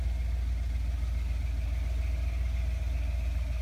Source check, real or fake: real